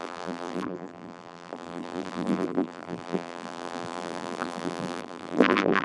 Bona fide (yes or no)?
no